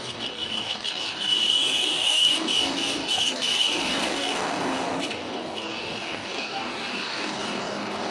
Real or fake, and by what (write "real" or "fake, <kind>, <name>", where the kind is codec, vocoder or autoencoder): fake, codec, DAC